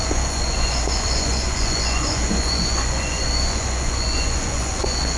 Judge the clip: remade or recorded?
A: remade